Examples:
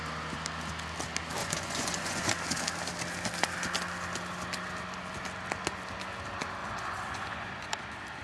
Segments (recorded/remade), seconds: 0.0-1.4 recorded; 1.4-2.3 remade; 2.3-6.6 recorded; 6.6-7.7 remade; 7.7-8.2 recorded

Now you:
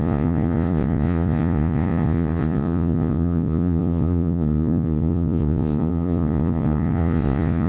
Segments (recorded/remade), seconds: 0.0-7.7 remade

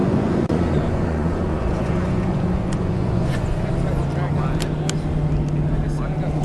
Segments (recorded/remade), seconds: 0.0-3.7 remade; 3.7-6.4 recorded

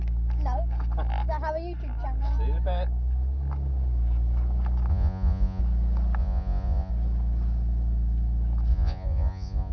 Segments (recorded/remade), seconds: 0.0-4.9 recorded; 4.9-5.6 remade; 5.6-6.2 recorded; 6.2-6.9 remade; 6.9-8.7 recorded; 8.7-9.7 remade

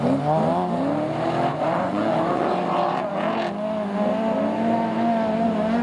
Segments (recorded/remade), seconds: 0.0-1.5 recorded; 1.5-3.1 remade; 3.1-5.8 recorded